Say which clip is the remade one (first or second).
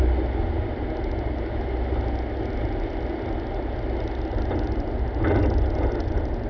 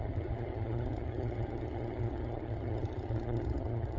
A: second